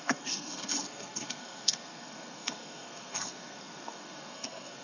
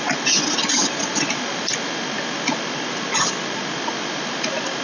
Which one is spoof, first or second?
first